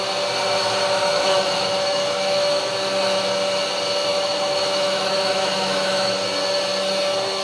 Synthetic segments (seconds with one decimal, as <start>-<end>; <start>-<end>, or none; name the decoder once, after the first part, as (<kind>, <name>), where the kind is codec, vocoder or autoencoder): 1.0-2.6 (autoencoder, DAC-VAE); 4.1-6.1